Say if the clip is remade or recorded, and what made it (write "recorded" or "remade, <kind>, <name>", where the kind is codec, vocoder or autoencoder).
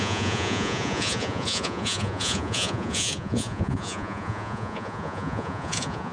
remade, vocoder, Vocos